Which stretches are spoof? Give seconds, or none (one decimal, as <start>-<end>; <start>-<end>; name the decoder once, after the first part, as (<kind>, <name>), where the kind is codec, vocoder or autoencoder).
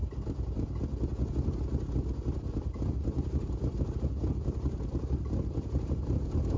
2.5-6.6 (vocoder, BigVGAN v2)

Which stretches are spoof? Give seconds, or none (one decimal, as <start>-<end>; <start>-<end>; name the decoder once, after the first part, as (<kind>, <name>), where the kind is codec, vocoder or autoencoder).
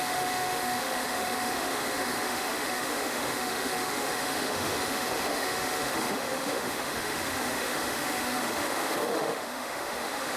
0.0-10.4 (autoencoder, DAC-VAE)